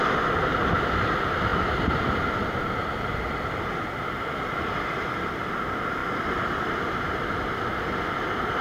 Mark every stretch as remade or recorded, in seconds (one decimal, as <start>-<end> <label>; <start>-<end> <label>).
0.0-8.6 recorded